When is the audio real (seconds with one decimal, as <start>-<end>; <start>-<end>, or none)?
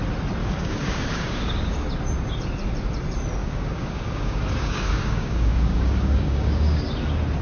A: 0.0-0.4; 1.9-3.4; 6.8-7.4